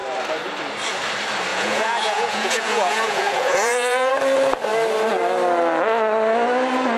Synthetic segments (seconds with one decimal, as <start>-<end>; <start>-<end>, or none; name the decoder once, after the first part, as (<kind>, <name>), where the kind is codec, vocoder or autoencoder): 1.5-4.1 (vocoder, Vocos)